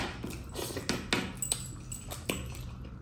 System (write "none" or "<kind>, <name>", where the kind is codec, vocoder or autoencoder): none